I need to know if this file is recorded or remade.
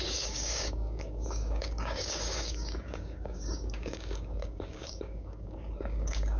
remade